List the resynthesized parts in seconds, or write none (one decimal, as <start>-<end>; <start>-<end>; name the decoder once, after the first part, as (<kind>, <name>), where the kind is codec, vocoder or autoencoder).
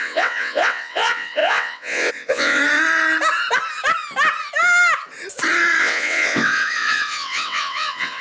0.0-2.6 (vocoder, WaveNeXt); 5.8-8.2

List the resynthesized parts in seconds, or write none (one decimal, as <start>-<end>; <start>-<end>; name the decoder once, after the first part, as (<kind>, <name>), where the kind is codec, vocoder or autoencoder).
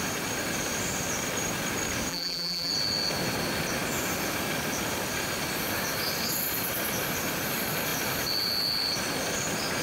2.1-2.7 (vocoder, BigVGAN v2)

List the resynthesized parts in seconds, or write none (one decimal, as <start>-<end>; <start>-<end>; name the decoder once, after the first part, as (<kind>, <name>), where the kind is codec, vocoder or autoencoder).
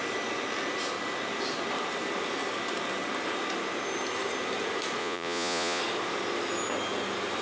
5.0-5.8 (vocoder, Vocos)